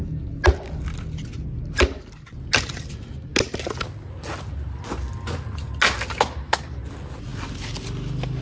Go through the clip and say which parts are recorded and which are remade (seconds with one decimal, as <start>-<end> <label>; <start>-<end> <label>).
0.0-8.4 recorded